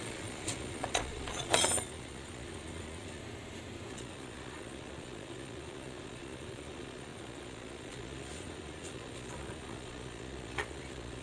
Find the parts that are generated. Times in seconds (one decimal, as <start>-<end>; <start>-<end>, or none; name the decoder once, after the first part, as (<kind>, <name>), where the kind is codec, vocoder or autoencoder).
0.0-3.2 (vocoder, Vocos); 3.9-11.2